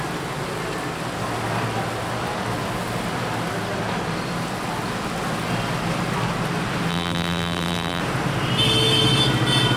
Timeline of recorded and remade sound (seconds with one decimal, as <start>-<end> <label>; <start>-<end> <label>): 0.0-6.9 recorded; 6.9-8.0 remade; 8.0-9.8 recorded